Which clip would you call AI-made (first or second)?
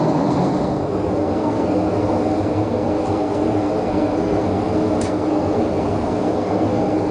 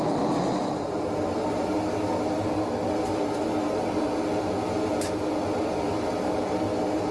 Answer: first